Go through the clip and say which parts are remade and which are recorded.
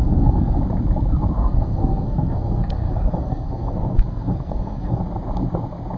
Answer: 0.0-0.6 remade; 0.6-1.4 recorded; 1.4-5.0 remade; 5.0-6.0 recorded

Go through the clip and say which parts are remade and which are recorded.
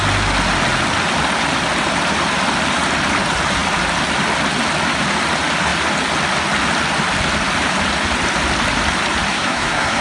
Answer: 0.0-9.3 recorded; 9.3-10.0 remade